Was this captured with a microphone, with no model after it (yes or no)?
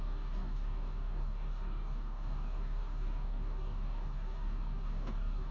no